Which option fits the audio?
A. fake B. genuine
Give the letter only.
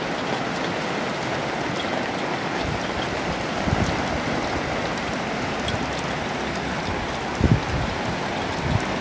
B